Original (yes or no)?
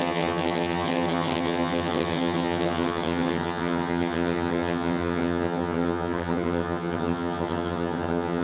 no